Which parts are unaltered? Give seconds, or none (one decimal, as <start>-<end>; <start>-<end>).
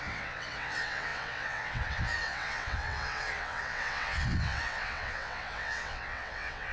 none